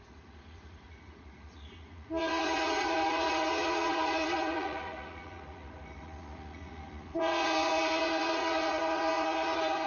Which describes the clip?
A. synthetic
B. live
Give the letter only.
A